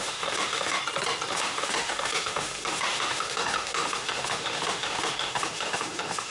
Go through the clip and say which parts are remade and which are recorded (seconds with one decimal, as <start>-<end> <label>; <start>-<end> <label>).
0.0-0.8 remade; 0.8-1.3 recorded; 1.3-6.3 remade